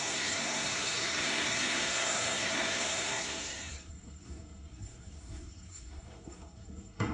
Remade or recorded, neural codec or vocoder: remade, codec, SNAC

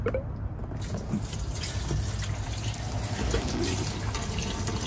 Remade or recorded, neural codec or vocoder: recorded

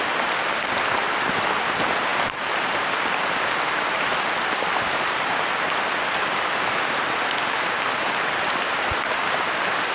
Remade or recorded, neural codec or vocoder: recorded